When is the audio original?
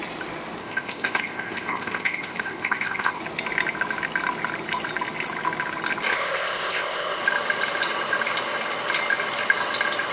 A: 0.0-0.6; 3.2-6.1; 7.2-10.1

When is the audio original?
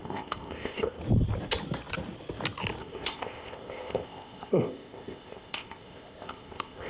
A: 1.0-2.8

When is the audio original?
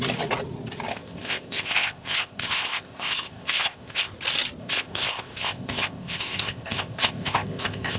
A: 0.0-0.9; 4.1-4.6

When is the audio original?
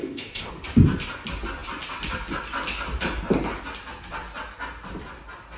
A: 0.5-5.6